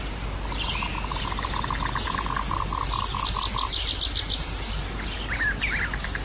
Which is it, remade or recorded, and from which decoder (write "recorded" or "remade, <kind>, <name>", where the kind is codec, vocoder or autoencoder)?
recorded